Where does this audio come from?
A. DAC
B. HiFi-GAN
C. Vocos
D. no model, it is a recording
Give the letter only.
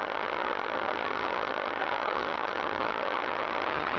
B